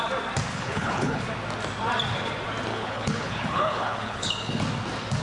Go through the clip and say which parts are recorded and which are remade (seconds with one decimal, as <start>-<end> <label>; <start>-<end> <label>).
0.0-0.5 recorded; 0.5-1.2 remade; 1.2-2.7 recorded; 2.7-4.6 remade; 4.6-5.2 recorded

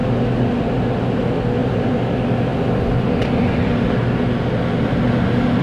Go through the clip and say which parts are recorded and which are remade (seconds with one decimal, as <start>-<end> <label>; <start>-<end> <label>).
0.0-1.6 recorded; 1.6-2.1 remade; 2.1-2.5 recorded; 2.5-3.2 remade; 3.2-5.6 recorded

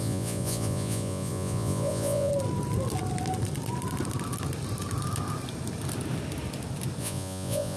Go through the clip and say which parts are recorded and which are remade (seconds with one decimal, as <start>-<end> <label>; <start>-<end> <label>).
0.0-2.3 remade; 2.3-7.0 recorded; 7.0-7.8 remade

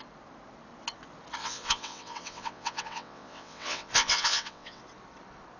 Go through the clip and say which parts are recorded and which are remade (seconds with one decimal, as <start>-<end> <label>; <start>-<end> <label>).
0.0-1.4 recorded; 1.4-4.8 remade; 4.8-5.6 recorded

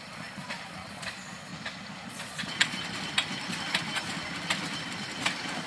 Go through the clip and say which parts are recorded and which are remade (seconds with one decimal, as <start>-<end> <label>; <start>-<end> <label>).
0.0-1.5 remade; 1.5-2.1 recorded; 2.1-2.8 remade; 2.8-5.7 recorded

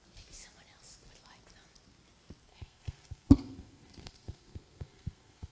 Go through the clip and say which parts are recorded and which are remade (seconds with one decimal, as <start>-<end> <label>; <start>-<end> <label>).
0.0-2.5 recorded; 2.5-5.5 remade